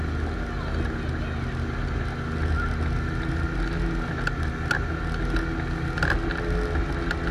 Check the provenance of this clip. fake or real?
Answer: real